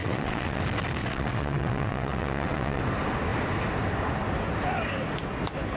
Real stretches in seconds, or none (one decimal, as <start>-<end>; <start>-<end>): 0.6-1.0; 2.8-5.8